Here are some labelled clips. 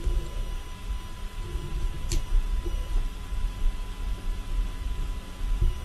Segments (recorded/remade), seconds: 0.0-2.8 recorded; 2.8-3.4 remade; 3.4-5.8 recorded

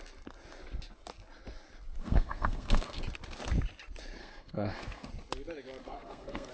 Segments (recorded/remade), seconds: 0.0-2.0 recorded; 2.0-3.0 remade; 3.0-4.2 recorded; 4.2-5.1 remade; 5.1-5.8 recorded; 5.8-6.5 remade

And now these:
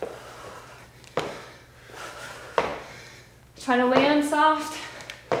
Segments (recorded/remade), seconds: 0.0-2.7 remade; 2.7-5.4 recorded

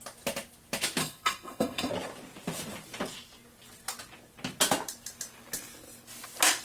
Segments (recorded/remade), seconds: 0.0-1.0 recorded; 1.0-1.9 remade; 1.9-6.6 recorded

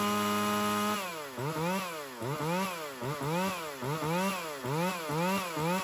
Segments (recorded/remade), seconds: 0.0-5.8 recorded

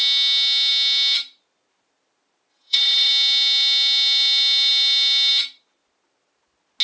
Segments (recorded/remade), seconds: 0.0-2.5 recorded; 2.5-3.1 remade; 3.1-6.8 recorded

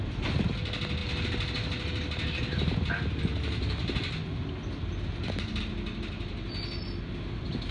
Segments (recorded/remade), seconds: 0.0-7.7 recorded